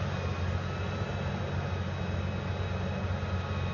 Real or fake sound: real